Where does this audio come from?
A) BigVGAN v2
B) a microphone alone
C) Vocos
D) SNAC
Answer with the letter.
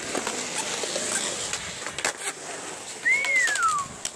B